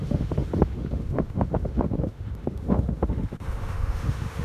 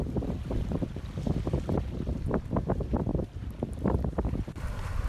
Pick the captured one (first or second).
second